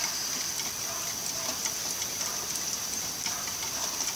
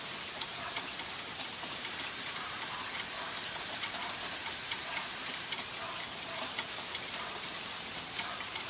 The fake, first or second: second